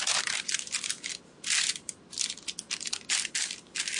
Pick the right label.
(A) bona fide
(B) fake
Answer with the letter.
A